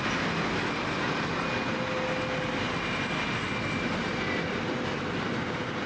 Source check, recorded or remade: recorded